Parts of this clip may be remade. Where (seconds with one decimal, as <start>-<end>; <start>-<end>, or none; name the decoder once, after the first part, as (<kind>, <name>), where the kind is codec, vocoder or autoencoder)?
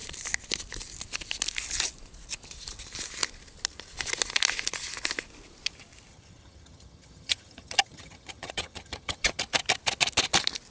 6.1-9.4 (vocoder, HiFi-GAN)